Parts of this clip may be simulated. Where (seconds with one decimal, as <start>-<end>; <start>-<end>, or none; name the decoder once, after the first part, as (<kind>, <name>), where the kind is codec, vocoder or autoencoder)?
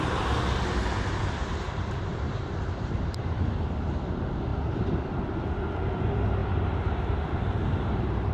1.2-3.5 (vocoder, BigVGAN v2); 6.4-8.3